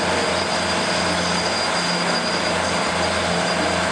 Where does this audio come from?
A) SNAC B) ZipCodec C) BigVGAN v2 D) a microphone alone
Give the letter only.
D